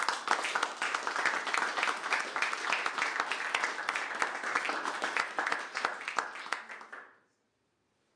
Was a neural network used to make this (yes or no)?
no